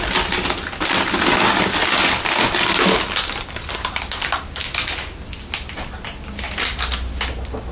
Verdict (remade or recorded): recorded